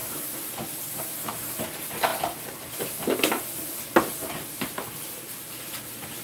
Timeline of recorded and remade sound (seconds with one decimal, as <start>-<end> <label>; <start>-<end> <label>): 0.0-6.2 recorded

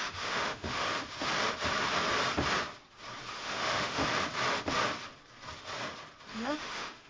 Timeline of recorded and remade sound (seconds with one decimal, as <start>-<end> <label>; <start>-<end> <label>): 0.0-0.9 remade; 0.9-3.3 recorded; 3.3-4.0 remade; 4.0-6.3 recorded; 6.3-7.1 remade

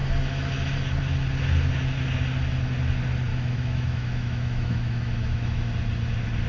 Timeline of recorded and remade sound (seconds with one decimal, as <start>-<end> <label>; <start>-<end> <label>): 0.0-3.3 recorded; 3.3-5.7 remade; 5.7-6.5 recorded

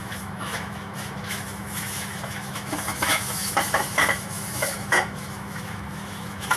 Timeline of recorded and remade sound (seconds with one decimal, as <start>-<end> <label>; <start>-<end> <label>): 0.0-6.6 remade

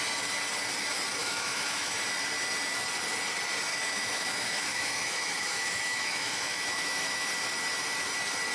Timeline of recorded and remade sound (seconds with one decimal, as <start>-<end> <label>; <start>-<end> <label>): 0.0-1.2 recorded; 1.2-1.9 remade; 1.9-3.7 recorded; 3.7-7.3 remade; 7.3-8.5 recorded

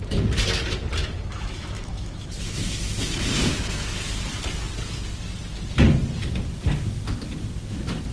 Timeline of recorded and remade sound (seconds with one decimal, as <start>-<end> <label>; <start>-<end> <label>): 0.0-1.0 recorded; 1.0-3.9 remade; 3.9-8.1 recorded

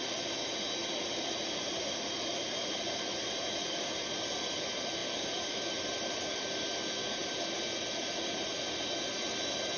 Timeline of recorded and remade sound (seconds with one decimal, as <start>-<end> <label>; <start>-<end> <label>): 0.0-9.8 recorded

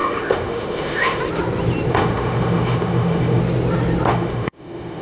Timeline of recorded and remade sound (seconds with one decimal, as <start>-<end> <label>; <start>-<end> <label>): 0.0-1.2 remade; 1.2-1.9 recorded; 1.9-3.4 remade; 3.4-4.1 recorded; 4.1-5.0 remade